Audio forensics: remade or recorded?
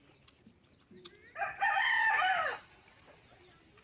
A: recorded